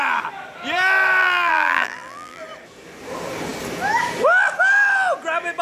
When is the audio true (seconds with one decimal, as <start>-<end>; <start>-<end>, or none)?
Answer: 0.0-1.2; 2.4-5.6